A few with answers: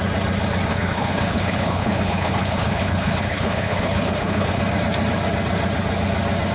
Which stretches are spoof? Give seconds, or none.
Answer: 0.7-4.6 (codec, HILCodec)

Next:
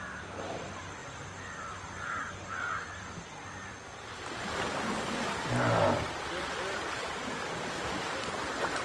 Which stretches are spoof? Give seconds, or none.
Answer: none

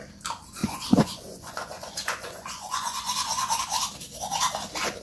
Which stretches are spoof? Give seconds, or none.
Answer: 0.6-3.6 (vocoder, Vocos)

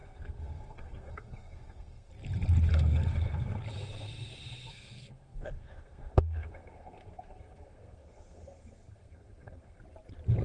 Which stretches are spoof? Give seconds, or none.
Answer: 0.0-2.1 (codec, SNAC); 2.7-3.6; 4.7-9.8

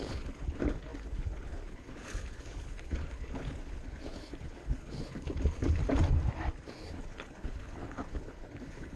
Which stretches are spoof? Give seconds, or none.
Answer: 0.0-5.8 (codec, HILCodec); 6.7-9.0

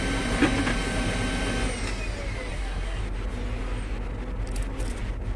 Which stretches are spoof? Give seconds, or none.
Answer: 2.5-3.0 (codec, SNAC)

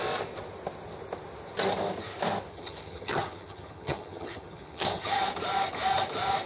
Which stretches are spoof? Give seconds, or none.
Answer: 2.5-5.2 (vocoder, HiFi-GAN)

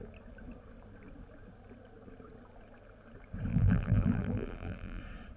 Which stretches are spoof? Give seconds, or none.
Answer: 3.5-5.0 (vocoder, BigVGAN v2)